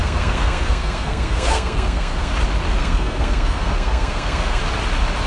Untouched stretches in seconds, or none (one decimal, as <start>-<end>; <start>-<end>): 2.3-2.8; 4.6-5.3